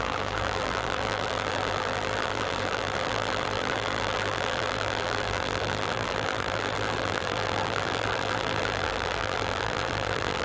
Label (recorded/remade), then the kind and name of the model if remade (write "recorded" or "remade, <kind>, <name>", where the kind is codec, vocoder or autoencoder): remade, vocoder, BigVGAN v2